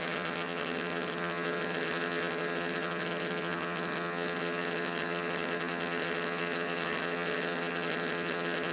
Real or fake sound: fake